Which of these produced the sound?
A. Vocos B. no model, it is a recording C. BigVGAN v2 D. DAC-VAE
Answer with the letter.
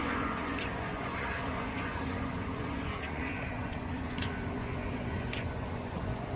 A